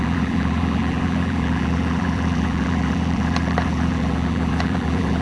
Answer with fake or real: fake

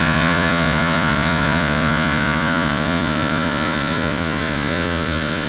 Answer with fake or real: fake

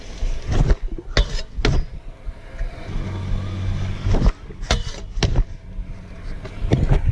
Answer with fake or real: real